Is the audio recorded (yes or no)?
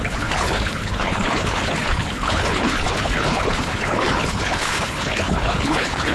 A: no